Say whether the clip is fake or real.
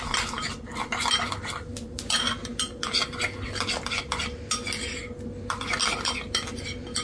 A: real